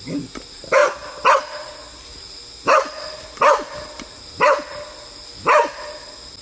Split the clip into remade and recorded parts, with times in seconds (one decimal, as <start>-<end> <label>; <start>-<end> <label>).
0.0-6.4 recorded